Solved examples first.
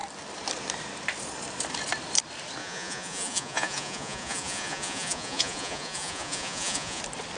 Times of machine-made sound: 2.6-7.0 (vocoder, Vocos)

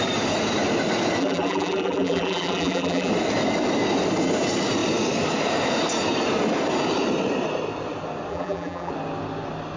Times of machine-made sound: 1.2-3.1 (vocoder, BigVGAN v2); 8.3-8.9